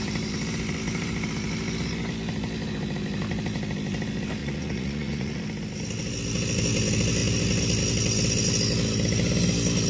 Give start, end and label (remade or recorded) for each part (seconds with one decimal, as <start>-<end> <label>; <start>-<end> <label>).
0.0-4.4 recorded; 4.4-5.4 remade; 5.4-9.9 recorded